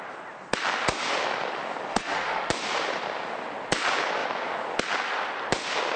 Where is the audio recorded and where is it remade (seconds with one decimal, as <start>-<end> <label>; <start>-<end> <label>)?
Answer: 0.0-1.9 recorded; 1.9-2.5 remade; 2.5-6.0 recorded